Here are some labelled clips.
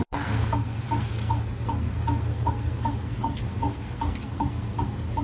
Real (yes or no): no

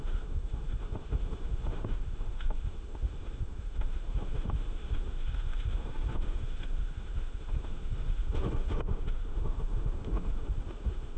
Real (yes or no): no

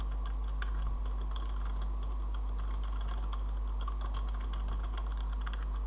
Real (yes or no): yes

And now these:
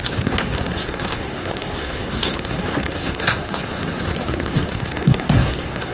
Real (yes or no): no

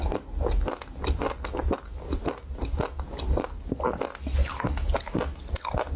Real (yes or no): yes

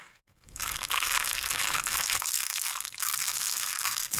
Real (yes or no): no